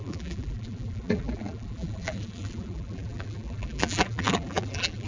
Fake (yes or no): yes